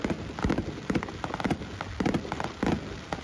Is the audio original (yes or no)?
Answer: yes